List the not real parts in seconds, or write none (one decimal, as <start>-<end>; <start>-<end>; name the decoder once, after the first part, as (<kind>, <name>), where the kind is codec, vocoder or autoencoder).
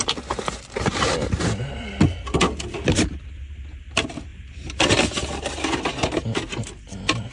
4.3-5.0 (vocoder, BigVGAN v2)